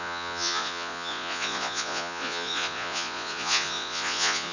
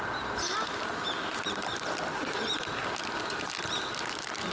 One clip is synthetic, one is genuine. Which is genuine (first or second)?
second